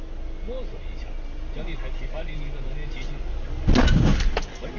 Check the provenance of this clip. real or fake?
real